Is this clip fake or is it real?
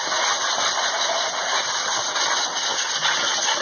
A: real